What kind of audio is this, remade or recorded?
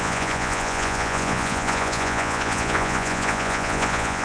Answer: remade